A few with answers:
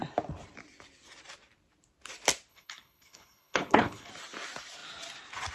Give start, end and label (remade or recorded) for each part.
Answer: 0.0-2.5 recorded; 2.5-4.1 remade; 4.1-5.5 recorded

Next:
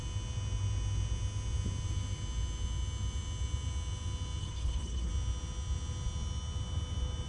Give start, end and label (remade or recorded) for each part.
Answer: 0.0-4.4 recorded; 4.4-5.1 remade; 5.1-7.3 recorded

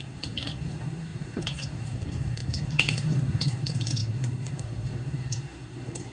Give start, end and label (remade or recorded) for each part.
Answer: 0.0-6.1 remade

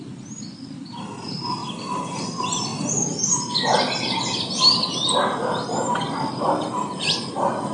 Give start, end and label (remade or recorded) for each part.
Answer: 0.0-1.6 recorded; 1.6-2.2 remade; 2.2-7.7 recorded

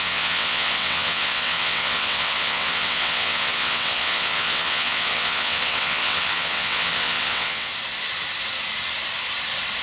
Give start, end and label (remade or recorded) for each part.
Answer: 0.0-7.7 remade; 7.7-9.8 recorded

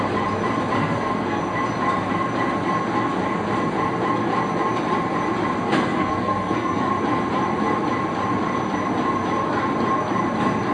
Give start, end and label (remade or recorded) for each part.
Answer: 0.0-0.8 recorded; 0.8-1.4 remade; 1.4-5.6 recorded; 5.6-6.9 remade; 6.9-10.7 recorded

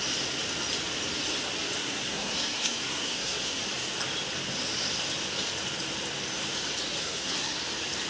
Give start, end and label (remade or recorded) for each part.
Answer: 0.0-1.8 recorded; 1.8-3.6 remade; 3.6-7.0 recorded; 7.0-7.6 remade; 7.6-8.1 recorded